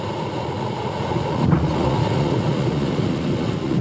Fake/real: fake